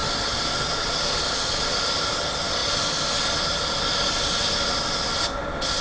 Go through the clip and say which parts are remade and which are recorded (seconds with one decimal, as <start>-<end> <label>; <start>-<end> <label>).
0.0-5.8 recorded